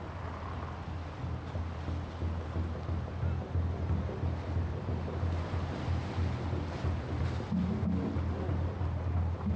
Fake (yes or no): no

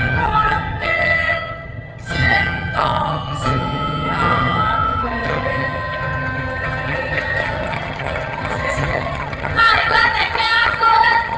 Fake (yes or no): yes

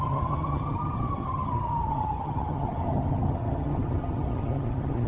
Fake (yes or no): yes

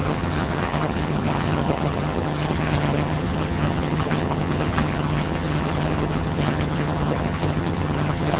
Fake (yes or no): yes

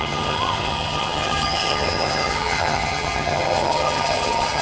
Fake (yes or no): yes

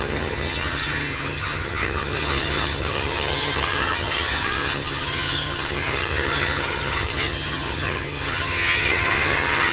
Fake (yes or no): yes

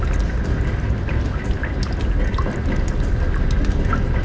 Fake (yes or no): no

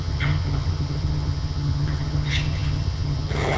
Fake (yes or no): yes